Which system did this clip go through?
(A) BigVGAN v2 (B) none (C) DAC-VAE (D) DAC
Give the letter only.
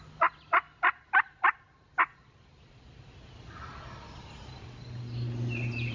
B